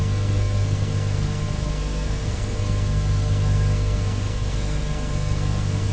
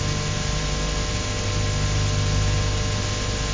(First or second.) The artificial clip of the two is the first